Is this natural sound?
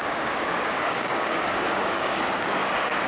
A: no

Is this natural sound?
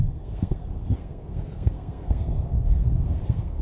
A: no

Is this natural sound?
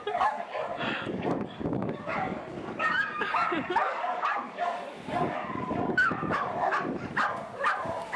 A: no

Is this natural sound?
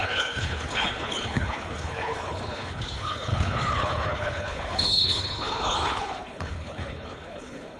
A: no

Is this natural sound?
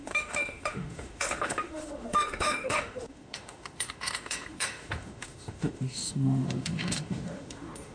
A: no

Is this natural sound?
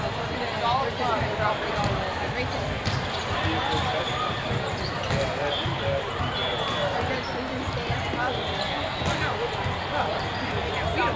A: yes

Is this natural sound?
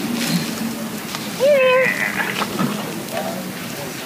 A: yes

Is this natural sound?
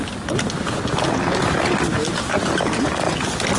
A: yes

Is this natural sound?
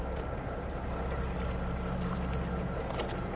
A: yes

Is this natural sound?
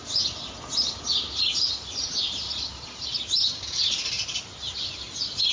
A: yes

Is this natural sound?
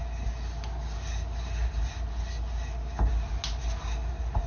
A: yes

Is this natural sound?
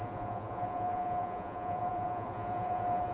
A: no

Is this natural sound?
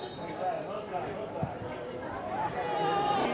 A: yes